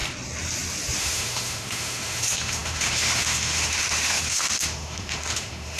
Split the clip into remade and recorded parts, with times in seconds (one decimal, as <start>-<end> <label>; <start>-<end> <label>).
0.0-1.0 recorded; 1.0-5.8 remade